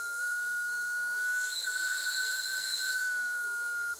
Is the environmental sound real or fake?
fake